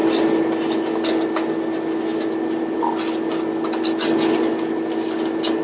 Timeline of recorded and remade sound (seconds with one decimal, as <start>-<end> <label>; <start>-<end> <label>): 0.0-5.6 recorded